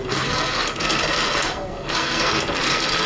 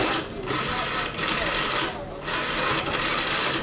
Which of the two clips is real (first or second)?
second